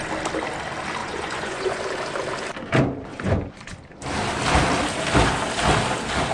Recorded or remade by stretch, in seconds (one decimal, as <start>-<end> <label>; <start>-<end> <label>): 0.0-1.0 recorded; 1.0-1.8 remade; 1.8-3.1 recorded; 3.1-3.8 remade; 3.8-6.3 recorded